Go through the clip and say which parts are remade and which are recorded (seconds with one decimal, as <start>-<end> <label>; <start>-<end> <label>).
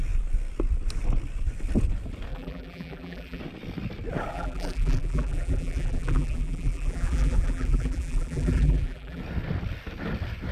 0.0-2.3 recorded; 2.3-3.4 remade; 3.4-4.3 recorded; 4.3-9.2 remade; 9.2-10.5 recorded